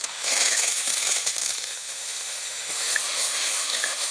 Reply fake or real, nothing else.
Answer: fake